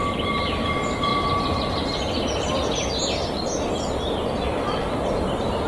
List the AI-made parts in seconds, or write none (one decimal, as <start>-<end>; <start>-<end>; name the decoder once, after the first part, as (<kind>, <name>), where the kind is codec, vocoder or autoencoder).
none